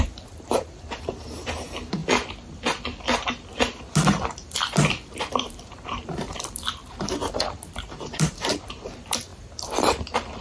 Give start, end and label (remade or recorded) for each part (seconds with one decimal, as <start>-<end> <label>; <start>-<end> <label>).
0.0-2.0 remade; 2.0-5.3 recorded; 5.3-6.8 remade; 6.8-8.2 recorded; 8.2-10.4 remade